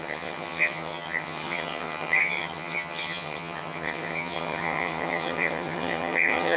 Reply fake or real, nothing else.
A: fake